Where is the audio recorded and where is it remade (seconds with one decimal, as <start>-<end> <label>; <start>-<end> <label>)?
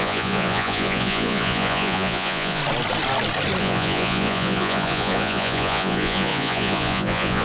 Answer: 0.0-2.6 remade; 2.6-3.6 recorded; 3.6-7.4 remade